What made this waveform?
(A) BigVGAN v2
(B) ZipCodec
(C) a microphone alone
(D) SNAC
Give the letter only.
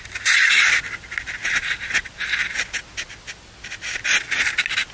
C